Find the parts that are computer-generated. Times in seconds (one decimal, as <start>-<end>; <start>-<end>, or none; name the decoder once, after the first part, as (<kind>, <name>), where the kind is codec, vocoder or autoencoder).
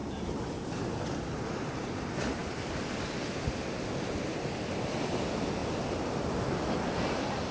none